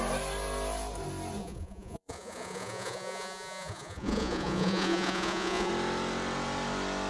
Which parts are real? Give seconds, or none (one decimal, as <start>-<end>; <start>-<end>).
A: 0.0-1.4; 5.7-7.1